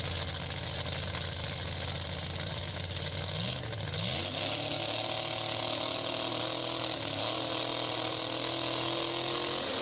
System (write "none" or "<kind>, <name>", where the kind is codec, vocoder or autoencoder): none